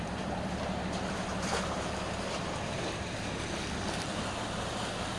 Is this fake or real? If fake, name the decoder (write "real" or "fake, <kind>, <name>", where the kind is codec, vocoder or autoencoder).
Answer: fake, vocoder, BigVGAN v2